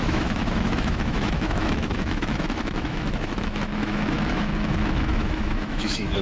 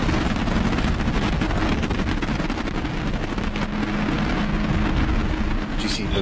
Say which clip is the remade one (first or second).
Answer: first